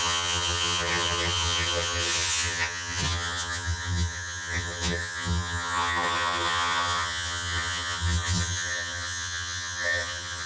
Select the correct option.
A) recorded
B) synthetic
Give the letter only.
B